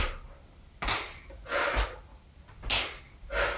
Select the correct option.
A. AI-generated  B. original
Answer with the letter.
B